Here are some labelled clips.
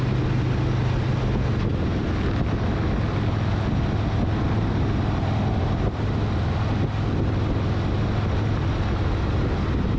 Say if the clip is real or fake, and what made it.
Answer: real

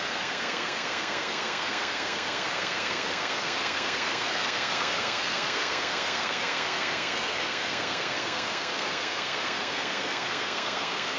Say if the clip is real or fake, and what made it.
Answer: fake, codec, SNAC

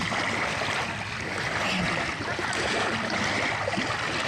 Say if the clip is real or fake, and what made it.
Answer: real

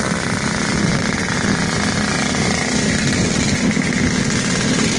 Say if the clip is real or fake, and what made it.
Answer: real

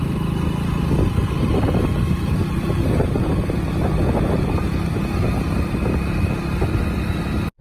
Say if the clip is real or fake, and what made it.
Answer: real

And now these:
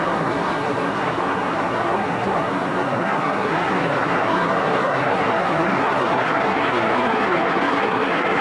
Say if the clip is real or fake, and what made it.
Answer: fake, codec, SNAC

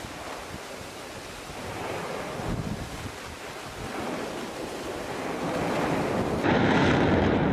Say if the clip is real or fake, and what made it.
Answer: real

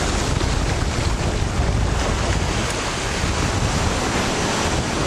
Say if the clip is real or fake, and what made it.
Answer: real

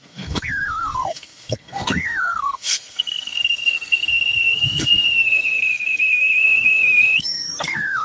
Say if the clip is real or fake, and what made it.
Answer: fake, codec, SNAC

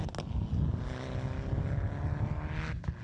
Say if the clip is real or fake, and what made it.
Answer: real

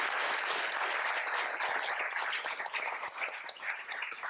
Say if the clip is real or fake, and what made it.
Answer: real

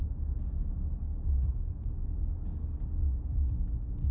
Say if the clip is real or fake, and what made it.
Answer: real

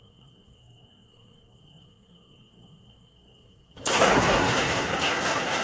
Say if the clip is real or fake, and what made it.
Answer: fake, codec, SNAC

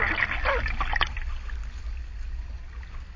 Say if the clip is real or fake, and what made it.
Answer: real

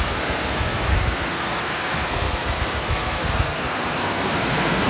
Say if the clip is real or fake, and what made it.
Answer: fake, codec, SNAC